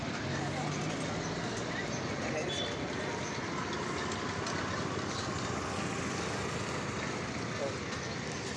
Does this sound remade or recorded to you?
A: recorded